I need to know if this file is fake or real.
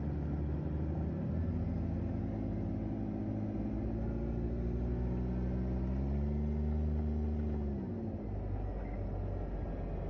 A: real